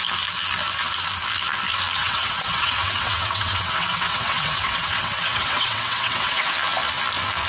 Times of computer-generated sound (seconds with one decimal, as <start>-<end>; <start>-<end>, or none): 2.0-6.5